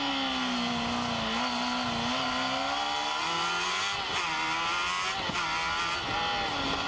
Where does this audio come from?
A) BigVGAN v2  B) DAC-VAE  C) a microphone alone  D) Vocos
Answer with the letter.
C